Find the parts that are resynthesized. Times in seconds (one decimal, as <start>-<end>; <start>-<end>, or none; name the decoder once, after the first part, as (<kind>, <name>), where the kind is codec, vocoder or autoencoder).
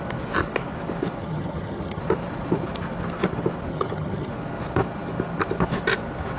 1.2-2.0 (vocoder, HiFi-GAN); 3.7-4.3